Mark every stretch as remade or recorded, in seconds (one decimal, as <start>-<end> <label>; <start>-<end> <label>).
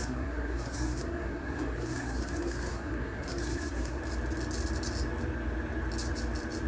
0.0-4.0 remade; 4.0-6.7 recorded